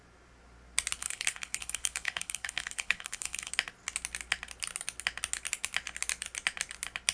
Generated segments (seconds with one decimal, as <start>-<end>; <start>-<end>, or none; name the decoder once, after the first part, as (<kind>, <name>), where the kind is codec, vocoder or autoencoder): 1.0-3.5 (codec, HILCodec)